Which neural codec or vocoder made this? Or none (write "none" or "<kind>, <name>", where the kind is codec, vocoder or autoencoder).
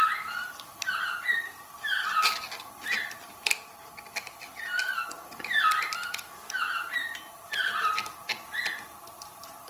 vocoder, BigVGAN v2